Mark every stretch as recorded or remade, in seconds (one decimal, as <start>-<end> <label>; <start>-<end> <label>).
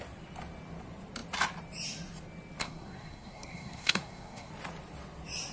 0.0-2.6 recorded; 2.6-4.5 remade; 4.5-5.5 recorded